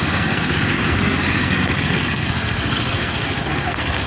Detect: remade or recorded remade